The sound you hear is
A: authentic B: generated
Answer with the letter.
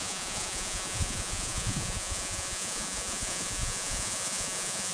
B